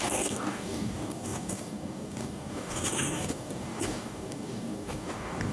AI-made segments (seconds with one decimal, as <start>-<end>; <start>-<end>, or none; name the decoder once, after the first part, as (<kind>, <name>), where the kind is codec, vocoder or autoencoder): 0.0-5.5 (codec, DAC)